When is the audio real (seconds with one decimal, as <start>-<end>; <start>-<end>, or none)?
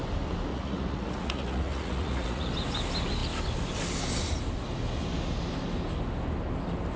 0.0-0.5; 2.5-7.0